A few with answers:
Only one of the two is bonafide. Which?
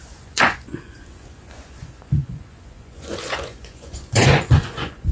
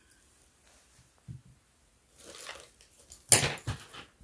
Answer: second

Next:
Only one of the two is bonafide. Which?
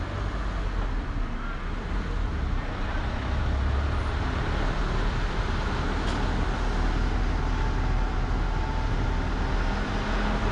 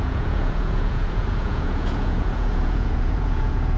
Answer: first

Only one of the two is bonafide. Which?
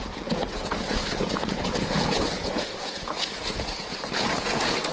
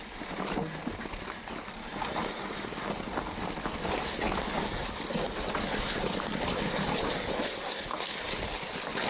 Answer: second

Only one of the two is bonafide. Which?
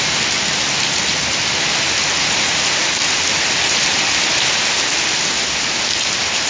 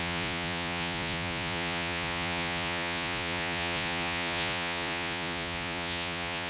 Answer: first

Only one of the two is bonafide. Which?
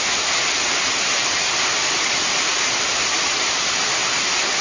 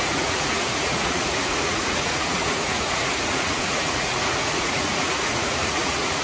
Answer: first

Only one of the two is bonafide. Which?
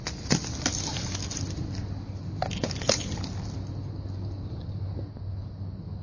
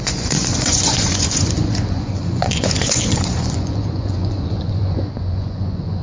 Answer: first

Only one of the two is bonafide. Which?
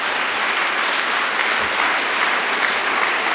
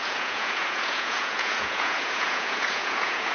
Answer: first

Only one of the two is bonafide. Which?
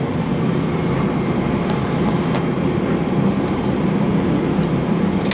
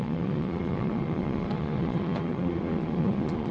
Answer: first